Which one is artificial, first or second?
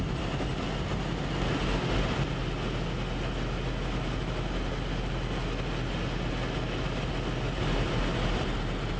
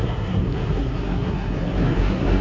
second